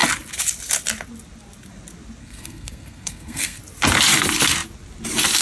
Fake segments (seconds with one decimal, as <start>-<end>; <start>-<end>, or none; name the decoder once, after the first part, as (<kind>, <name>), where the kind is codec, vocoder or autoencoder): 2.2-3.6 (codec, SNAC)